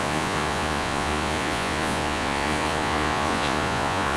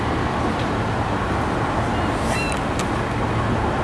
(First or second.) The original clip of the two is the second